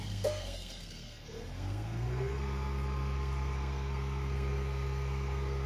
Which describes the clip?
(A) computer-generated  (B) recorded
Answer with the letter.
A